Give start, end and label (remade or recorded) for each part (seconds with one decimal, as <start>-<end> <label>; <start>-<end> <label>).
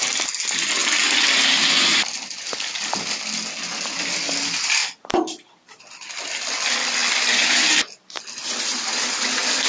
0.0-0.8 recorded; 0.8-2.9 remade; 2.9-4.8 recorded; 4.8-5.8 remade; 5.8-9.7 recorded